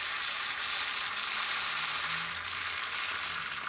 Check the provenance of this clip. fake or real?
real